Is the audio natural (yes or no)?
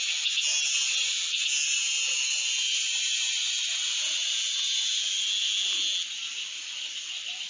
yes